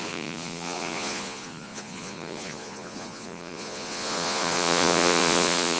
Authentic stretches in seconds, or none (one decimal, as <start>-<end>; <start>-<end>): none